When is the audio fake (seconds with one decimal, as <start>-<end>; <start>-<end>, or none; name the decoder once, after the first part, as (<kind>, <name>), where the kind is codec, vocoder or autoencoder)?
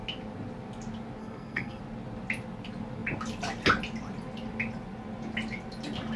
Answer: 1.2-1.8 (codec, SNAC)